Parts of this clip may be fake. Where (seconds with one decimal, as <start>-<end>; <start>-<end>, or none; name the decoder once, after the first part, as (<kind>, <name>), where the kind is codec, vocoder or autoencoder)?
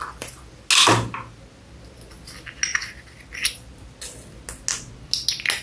none